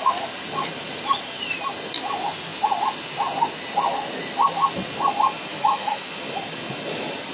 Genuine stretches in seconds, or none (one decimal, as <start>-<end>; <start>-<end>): 0.0-5.5; 6.1-7.3